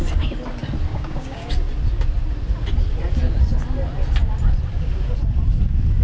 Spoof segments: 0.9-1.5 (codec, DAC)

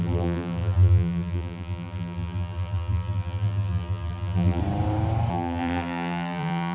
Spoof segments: 0.0-4.6 (vocoder, BigVGAN v2); 5.3-6.7

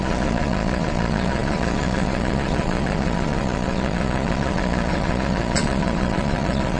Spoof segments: 0.0-6.8 (vocoder, Vocos)